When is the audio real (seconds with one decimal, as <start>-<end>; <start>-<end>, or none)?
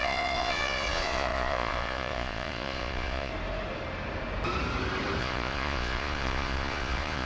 3.3-5.2